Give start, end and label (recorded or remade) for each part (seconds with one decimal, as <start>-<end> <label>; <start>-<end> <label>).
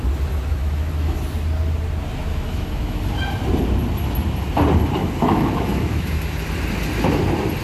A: 0.0-0.5 recorded; 0.5-1.2 remade; 1.2-2.3 recorded; 2.3-3.0 remade; 3.0-5.0 recorded; 5.0-6.4 remade; 6.4-7.6 recorded